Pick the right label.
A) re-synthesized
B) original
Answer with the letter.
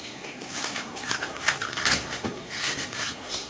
A